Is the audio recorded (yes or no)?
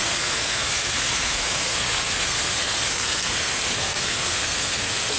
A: no